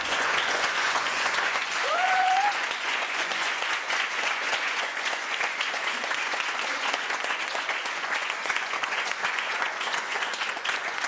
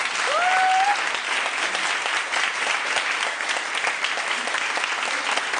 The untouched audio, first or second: second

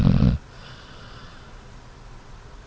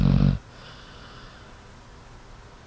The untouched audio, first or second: second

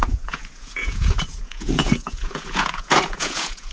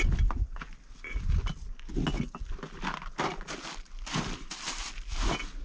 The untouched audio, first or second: second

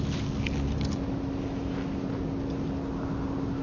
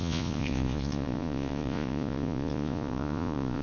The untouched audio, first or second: first